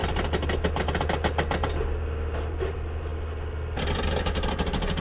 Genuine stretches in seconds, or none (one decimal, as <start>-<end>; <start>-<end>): 0.0-5.0